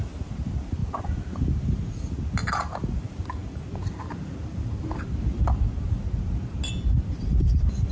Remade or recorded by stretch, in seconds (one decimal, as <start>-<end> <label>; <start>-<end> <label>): 0.0-7.9 recorded